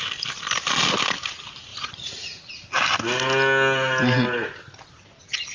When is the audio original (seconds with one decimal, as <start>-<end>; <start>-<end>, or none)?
0.0-1.7; 2.5-5.5